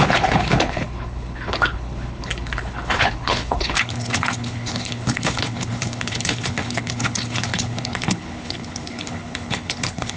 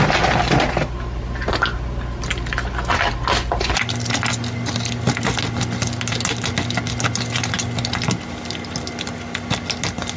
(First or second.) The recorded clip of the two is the second